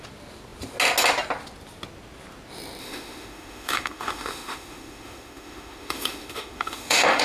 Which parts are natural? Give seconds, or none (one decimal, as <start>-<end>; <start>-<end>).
0.0-2.8